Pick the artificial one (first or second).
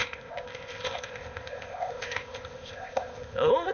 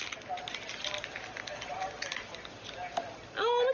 first